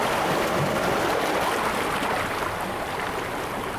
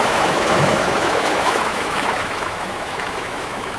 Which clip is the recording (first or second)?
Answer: first